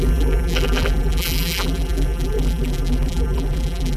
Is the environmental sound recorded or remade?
remade